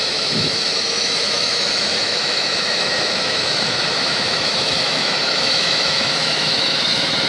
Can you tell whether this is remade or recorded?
remade